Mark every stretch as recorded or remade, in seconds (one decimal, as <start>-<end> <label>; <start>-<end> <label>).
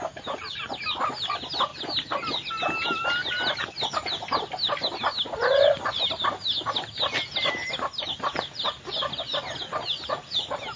0.0-10.8 recorded